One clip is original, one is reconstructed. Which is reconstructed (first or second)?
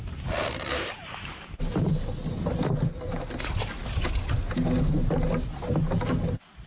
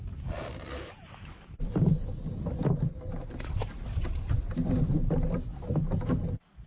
second